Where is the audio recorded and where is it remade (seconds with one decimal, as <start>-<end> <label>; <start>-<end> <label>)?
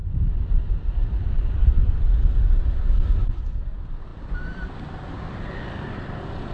0.0-1.6 remade; 1.6-4.1 recorded; 4.1-6.1 remade; 6.1-6.5 recorded